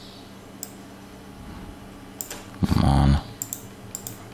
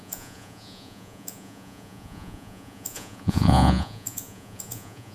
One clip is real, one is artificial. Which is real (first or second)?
first